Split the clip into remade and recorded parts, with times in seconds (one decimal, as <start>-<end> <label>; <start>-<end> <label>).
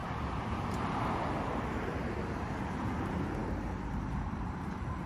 0.0-2.0 remade; 2.0-2.6 recorded; 2.6-5.1 remade